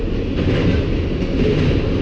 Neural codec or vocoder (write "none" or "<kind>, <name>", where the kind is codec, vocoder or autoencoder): none